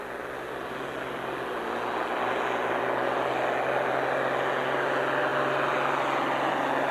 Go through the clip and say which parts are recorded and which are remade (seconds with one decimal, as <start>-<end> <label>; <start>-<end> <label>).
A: 0.0-6.9 recorded